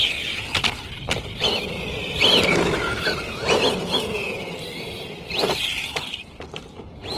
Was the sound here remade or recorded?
recorded